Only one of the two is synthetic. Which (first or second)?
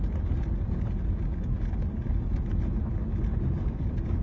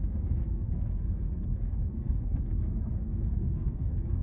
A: second